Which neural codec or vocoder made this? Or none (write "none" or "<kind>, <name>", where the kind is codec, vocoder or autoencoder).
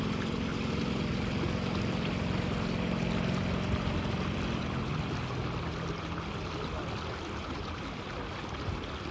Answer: none